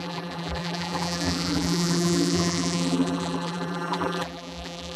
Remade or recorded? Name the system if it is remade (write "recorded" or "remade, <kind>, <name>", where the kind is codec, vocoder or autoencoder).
remade, vocoder, BigVGAN v2